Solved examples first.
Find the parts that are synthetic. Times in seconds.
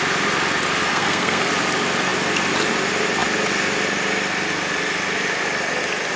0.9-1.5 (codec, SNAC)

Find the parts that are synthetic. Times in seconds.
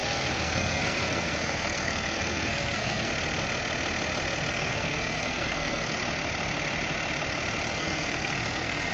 0.0-3.1 (codec, SNAC); 4.5-6.0; 7.7-8.9